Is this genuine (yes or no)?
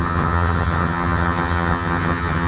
no